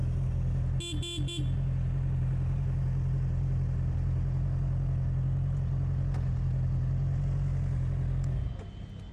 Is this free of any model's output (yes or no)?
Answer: yes